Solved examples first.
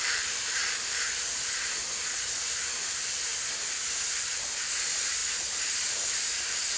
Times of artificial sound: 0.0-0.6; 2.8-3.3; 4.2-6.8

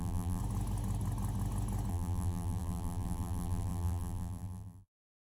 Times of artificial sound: 0.0-0.4; 1.9-5.2

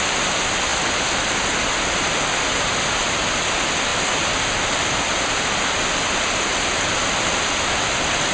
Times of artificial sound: 3.9-4.4; 6.5-7.0

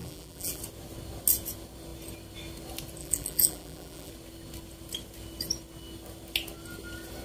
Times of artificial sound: 0.0-0.6; 3.0-4.1

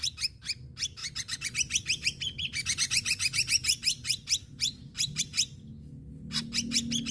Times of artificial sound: 1.0-5.2

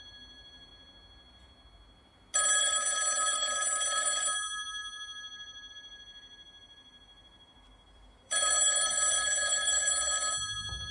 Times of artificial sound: 0.0-0.7; 2.6-10.9

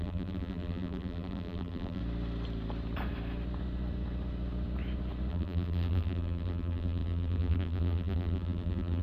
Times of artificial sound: 0.0-2.0; 5.3-9.0

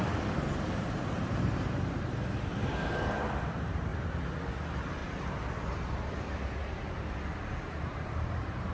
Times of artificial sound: 0.0-3.9; 4.5-5.0; 7.6-8.7